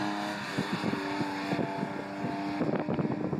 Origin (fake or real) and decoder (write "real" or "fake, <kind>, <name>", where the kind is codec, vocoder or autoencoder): real